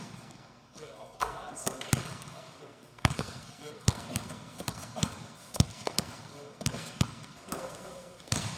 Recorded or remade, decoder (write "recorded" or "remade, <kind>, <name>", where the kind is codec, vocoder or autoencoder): remade, codec, SNAC